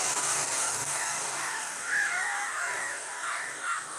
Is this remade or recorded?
remade